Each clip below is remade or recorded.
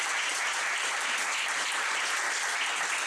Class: recorded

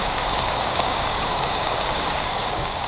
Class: remade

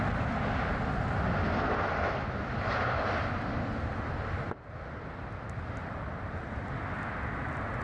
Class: recorded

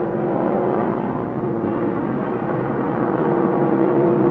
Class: remade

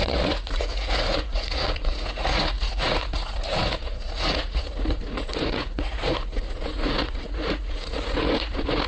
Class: remade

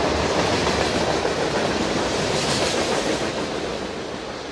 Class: recorded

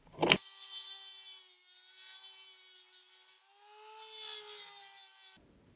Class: recorded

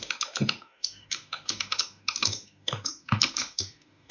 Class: remade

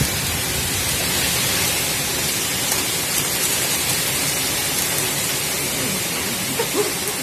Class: recorded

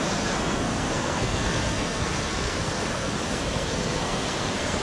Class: remade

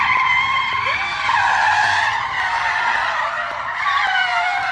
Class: recorded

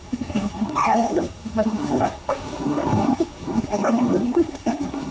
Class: remade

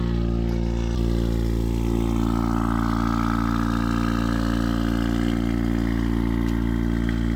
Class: recorded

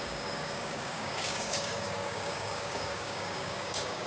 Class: remade